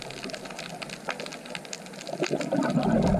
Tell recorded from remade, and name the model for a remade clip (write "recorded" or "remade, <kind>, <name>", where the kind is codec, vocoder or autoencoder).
recorded